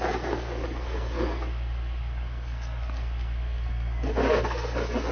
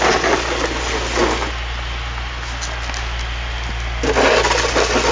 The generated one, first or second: first